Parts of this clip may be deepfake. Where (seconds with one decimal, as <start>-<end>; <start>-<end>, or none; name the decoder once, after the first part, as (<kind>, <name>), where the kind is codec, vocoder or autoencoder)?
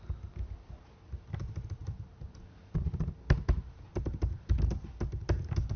none